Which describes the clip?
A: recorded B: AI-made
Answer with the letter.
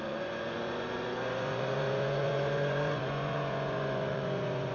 B